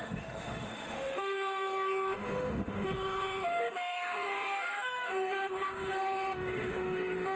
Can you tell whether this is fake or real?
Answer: fake